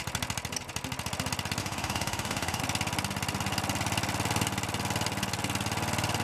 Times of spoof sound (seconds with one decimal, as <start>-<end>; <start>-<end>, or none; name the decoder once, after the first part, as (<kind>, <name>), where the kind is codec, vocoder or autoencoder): 1.6-2.6 (autoencoder, DAC-VAE)